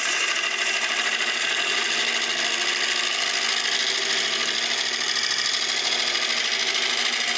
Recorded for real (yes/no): yes